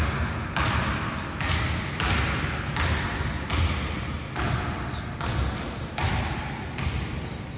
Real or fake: real